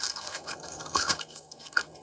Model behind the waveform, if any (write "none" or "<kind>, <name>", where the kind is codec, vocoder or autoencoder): codec, SNAC